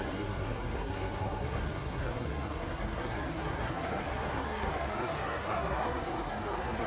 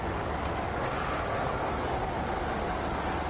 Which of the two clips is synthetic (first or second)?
first